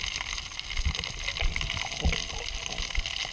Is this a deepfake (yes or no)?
no